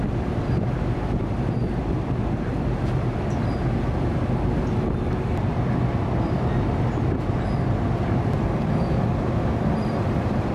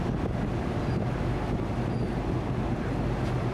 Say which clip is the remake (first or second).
first